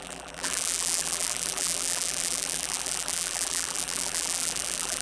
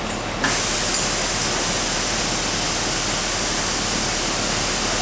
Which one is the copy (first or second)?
first